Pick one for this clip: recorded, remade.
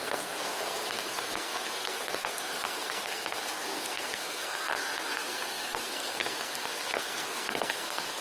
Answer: remade